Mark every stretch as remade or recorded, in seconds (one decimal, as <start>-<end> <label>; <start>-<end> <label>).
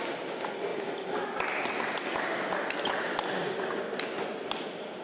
0.0-5.0 recorded